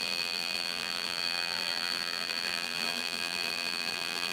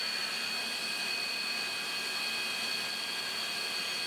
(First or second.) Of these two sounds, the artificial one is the first